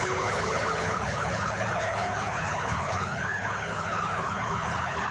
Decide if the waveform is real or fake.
fake